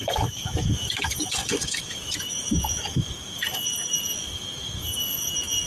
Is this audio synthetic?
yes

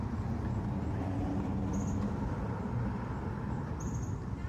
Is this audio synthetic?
no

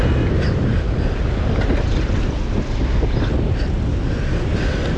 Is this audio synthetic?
no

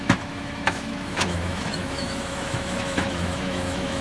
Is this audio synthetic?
yes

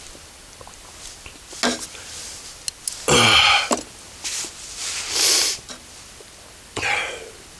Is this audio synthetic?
no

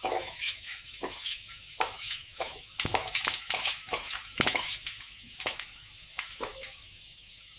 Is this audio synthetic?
yes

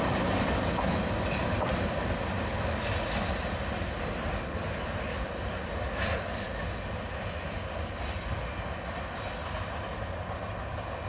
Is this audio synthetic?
no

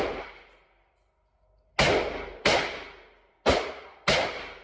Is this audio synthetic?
no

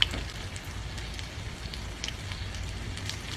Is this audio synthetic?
no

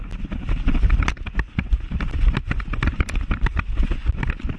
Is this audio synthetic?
no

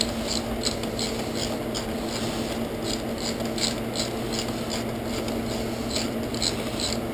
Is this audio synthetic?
no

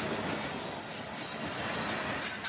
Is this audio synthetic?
no